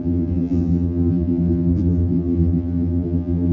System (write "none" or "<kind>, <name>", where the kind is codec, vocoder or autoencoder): vocoder, BigVGAN v2